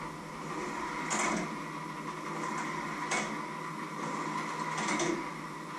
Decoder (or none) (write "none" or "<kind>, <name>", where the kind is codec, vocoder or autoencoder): none